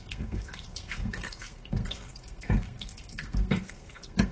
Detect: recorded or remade remade